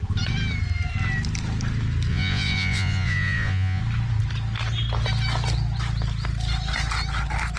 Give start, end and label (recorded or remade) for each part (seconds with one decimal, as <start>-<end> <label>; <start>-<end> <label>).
0.0-2.1 recorded; 2.1-3.8 remade; 3.8-7.6 recorded